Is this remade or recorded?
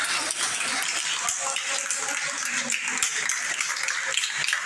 recorded